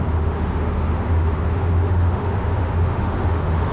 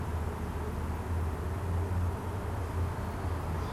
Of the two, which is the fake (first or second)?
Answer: first